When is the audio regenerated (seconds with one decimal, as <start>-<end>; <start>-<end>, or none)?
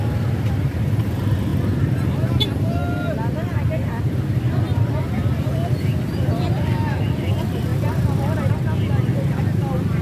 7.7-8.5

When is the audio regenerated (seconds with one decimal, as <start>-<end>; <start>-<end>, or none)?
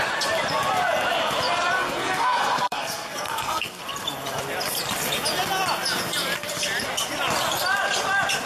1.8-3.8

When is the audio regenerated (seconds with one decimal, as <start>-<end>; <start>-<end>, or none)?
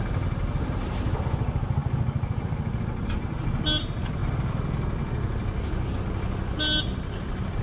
none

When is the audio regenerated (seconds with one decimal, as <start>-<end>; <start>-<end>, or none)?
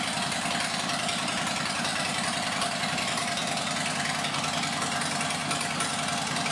none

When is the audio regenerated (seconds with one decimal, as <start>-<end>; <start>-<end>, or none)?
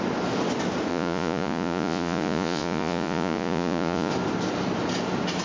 0.9-4.1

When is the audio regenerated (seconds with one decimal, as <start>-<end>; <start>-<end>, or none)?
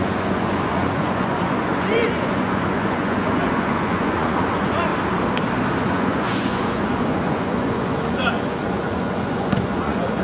0.0-4.9; 5.8-10.2